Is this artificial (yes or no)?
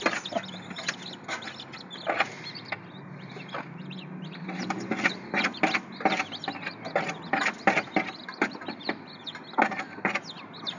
no